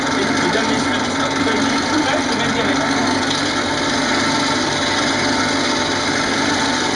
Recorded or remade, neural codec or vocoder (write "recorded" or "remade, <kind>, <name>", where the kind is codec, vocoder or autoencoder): recorded